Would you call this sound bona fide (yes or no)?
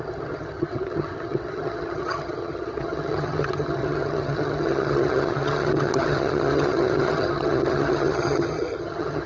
no